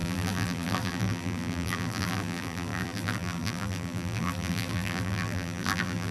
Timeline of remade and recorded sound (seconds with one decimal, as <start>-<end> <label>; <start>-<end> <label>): 0.0-6.1 remade